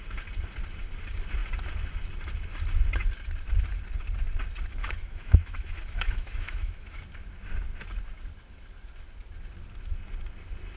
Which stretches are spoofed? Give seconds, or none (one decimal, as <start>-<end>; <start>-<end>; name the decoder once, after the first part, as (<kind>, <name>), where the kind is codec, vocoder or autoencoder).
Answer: 4.8-7.0 (autoencoder, DAC-VAE)